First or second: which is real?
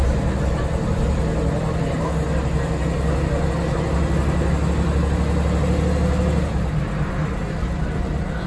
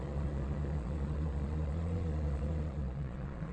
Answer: first